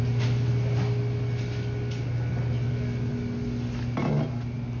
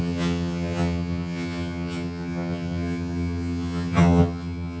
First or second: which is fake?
second